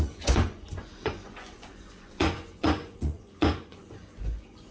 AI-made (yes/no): yes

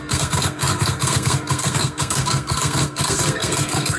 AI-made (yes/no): yes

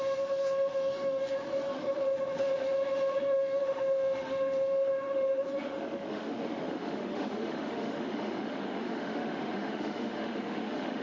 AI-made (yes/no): yes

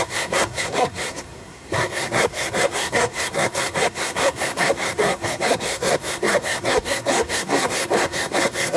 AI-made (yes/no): yes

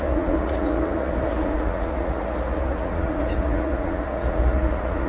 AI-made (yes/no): yes